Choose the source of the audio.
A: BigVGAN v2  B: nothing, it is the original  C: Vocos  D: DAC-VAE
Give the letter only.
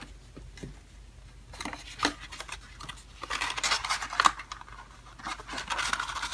B